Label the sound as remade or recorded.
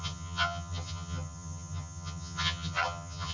remade